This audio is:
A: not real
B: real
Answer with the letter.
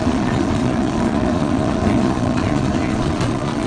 A